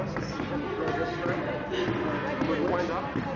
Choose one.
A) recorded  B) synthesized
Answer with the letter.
A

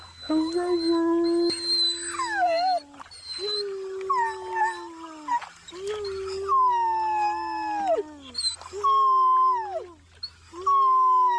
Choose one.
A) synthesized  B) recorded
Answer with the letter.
B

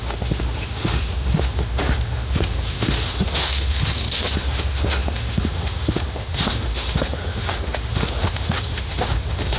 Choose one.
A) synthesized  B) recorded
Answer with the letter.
A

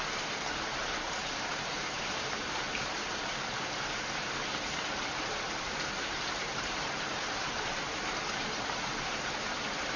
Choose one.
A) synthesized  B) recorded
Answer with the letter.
A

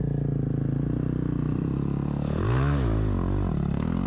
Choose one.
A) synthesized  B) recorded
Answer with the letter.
B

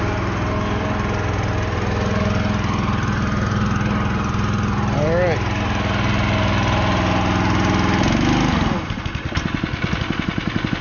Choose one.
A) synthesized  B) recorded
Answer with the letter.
B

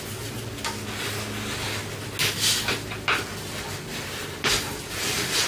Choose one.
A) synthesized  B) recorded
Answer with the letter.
B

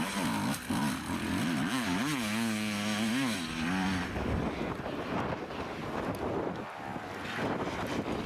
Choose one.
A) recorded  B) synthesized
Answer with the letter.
A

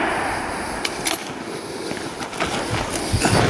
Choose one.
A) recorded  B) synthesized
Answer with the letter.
A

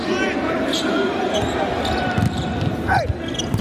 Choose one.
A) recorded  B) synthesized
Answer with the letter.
A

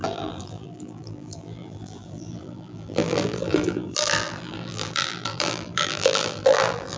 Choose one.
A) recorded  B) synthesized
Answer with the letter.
B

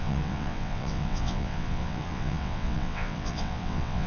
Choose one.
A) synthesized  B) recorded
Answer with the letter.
A